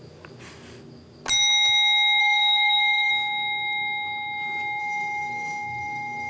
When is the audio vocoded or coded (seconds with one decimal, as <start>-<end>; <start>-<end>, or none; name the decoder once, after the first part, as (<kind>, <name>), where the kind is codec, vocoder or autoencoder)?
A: 2.2-3.1 (codec, DAC); 4.8-6.3